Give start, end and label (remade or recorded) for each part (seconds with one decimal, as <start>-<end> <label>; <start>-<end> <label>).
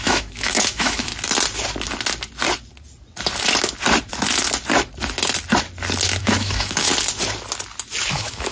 0.0-1.1 remade; 1.1-6.2 recorded; 6.2-6.9 remade; 6.9-8.1 recorded; 8.1-8.5 remade